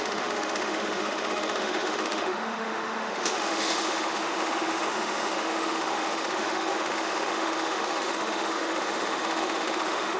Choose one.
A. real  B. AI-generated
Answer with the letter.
B